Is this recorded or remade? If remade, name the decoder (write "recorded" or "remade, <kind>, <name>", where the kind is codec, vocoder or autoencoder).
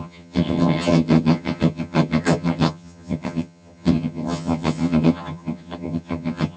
remade, vocoder, HiFi-GAN